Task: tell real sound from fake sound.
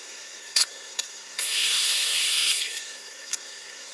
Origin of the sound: fake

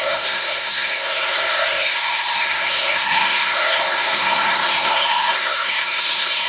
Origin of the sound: fake